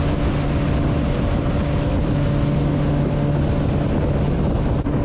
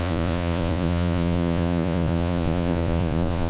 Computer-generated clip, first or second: second